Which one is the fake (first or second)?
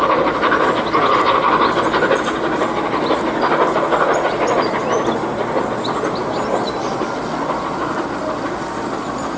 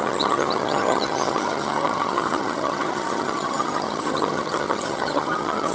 second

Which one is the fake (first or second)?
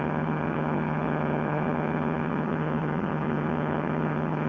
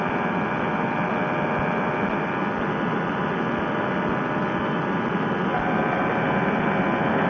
first